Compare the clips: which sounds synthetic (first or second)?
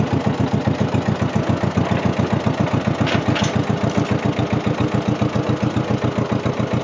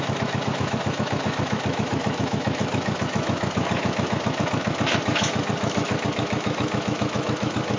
second